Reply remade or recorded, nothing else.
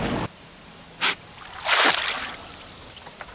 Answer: recorded